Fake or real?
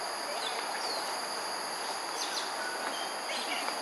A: real